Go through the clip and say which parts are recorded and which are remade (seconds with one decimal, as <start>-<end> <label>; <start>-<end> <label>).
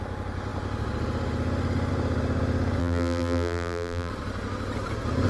0.0-2.8 recorded; 2.8-4.1 remade; 4.1-5.3 recorded